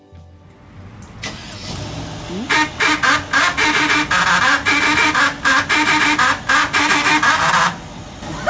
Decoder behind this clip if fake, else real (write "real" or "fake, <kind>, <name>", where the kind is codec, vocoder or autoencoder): real